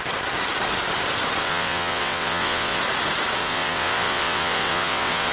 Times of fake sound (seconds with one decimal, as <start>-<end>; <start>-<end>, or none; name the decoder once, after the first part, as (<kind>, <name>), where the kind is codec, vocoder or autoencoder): 1.4-2.8 (vocoder, WaveNeXt); 3.4-5.3